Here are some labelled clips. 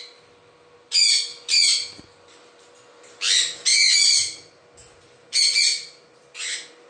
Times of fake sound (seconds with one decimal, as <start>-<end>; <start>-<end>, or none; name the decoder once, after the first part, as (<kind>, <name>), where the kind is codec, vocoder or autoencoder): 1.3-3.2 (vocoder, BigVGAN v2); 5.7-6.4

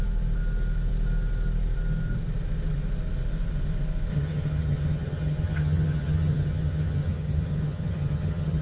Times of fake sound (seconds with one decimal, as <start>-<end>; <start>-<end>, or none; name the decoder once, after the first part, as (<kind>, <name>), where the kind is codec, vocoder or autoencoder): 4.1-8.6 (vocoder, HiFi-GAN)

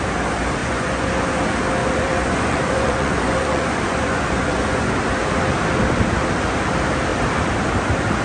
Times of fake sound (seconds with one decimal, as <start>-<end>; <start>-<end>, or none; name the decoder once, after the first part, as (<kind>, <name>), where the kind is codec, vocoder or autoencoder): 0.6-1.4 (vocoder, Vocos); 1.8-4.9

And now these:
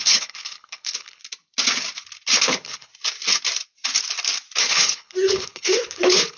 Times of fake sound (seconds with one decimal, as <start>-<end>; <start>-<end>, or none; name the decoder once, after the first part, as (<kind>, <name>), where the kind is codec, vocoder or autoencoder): 0.0-1.2 (codec, HILCodec); 2.4-2.9; 4.6-6.4

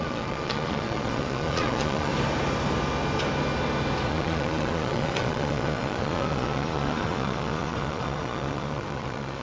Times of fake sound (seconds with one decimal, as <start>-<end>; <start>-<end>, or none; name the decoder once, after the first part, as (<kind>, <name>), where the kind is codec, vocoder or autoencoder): 0.0-2.1 (vocoder, Vocos); 4.1-9.4